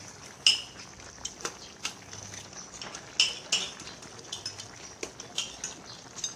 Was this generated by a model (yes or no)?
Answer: no